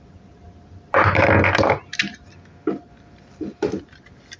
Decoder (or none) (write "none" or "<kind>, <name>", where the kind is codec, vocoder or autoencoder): vocoder, BigVGAN v2